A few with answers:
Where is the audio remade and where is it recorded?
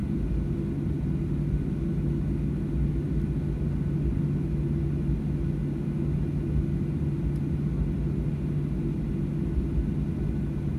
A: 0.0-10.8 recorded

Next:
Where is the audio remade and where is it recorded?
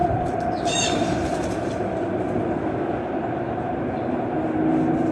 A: 0.0-1.9 remade; 1.9-5.1 recorded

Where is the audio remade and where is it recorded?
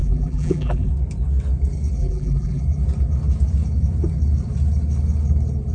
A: 0.0-0.9 remade; 0.9-2.0 recorded; 2.0-2.6 remade; 2.6-5.7 recorded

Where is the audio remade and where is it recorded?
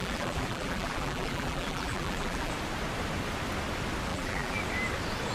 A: 0.0-2.5 remade; 2.5-4.1 recorded; 4.1-4.6 remade; 4.6-5.3 recorded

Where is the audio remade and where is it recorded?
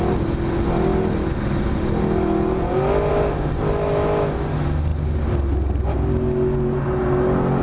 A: 0.0-7.6 recorded